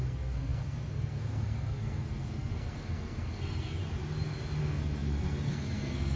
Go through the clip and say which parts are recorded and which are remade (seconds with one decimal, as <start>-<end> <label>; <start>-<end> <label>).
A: 0.0-3.8 remade; 3.8-4.6 recorded; 4.6-6.2 remade